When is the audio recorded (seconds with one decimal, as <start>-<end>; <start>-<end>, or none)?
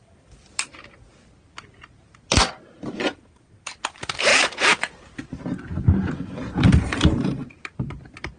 0.0-4.3; 5.2-8.4